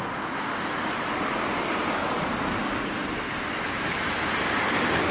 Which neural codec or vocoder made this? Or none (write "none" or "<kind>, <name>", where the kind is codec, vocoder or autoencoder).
none